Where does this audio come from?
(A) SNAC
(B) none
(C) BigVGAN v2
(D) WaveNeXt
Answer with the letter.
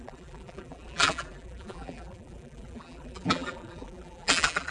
C